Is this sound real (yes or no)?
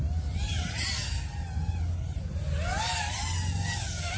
yes